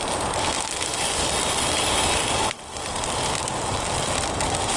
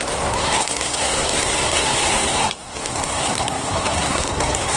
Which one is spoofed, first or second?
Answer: second